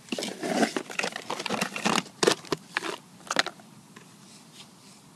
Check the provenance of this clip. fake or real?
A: real